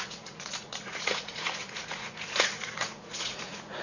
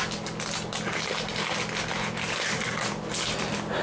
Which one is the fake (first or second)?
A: first